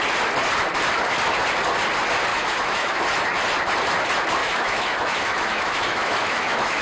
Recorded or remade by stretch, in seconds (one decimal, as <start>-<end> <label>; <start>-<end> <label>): 0.0-2.3 recorded; 2.3-3.0 remade; 3.0-4.4 recorded; 4.4-6.8 remade